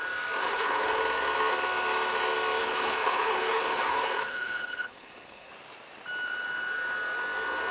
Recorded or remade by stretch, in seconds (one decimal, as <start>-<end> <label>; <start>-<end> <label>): 0.0-0.4 recorded; 0.4-1.0 remade; 1.0-2.6 recorded; 2.6-5.5 remade; 5.5-7.7 recorded